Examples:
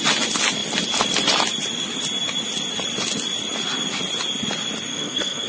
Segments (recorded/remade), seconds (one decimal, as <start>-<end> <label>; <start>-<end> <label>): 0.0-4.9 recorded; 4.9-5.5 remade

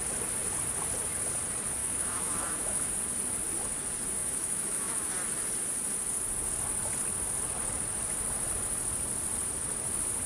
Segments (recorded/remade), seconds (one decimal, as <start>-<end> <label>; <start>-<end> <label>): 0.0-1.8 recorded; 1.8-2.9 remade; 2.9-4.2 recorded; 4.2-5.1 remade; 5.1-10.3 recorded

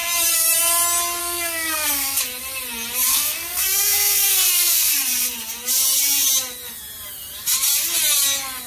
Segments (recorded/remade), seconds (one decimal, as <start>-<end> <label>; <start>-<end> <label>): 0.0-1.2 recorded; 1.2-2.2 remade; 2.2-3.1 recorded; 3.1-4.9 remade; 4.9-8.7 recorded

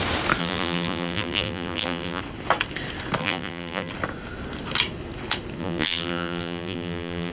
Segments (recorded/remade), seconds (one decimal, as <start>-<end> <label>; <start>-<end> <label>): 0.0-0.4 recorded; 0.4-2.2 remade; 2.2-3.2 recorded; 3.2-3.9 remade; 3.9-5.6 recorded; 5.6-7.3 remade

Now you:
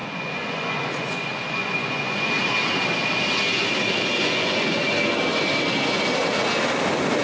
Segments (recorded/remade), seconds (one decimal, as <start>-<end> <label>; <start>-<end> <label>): 0.0-2.3 remade; 2.3-4.2 recorded; 4.2-4.8 remade; 4.8-7.2 recorded

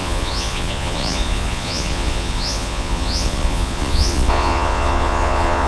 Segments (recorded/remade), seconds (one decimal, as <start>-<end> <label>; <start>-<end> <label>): 0.0-5.7 remade